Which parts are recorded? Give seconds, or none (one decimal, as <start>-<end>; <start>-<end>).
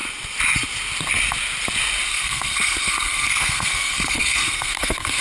0.0-2.1